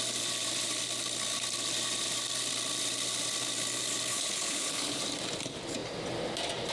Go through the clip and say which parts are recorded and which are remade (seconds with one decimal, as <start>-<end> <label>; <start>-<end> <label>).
0.0-4.1 recorded; 4.1-5.0 remade; 5.0-6.7 recorded